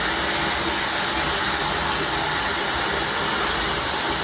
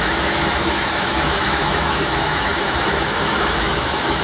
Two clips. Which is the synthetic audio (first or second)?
second